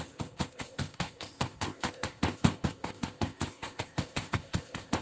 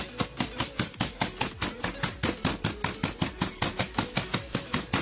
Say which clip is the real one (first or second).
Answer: second